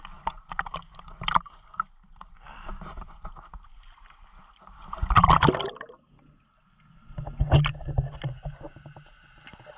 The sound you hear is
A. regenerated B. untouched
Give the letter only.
B